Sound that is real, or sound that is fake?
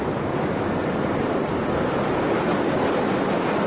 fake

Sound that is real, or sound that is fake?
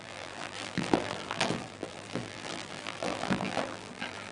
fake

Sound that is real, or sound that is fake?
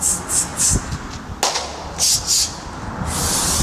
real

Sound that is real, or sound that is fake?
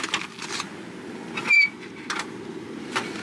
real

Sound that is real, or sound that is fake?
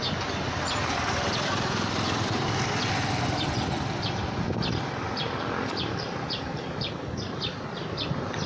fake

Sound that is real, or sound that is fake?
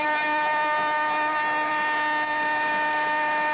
real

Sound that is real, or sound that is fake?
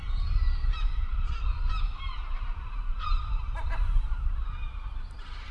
fake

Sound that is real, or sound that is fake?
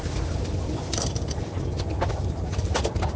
fake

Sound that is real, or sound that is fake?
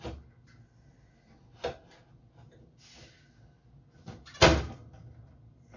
real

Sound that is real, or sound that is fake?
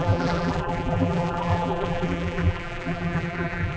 fake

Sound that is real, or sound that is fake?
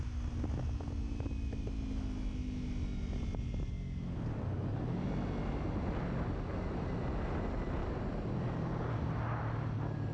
real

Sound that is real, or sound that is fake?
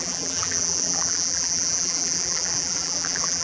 fake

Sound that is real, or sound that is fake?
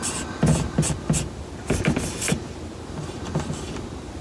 real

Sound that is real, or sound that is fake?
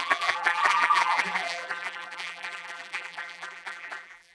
fake